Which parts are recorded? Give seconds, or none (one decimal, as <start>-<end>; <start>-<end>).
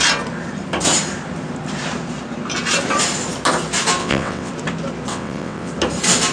0.0-4.0; 4.5-5.1; 5.7-6.3